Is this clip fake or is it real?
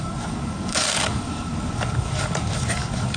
fake